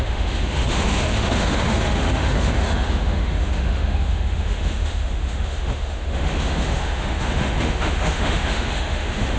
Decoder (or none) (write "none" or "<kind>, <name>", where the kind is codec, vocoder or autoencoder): autoencoder, DAC-VAE